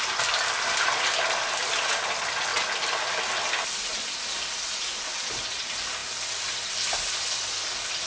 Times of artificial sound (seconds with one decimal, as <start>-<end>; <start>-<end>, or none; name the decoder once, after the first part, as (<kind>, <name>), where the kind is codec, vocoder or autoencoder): none